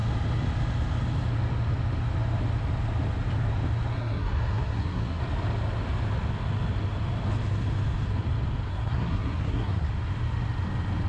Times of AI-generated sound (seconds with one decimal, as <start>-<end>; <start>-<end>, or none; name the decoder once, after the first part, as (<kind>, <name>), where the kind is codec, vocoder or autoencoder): 3.9-5.2 (codec, SNAC); 8.7-9.9